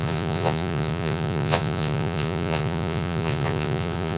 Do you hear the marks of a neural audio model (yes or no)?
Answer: yes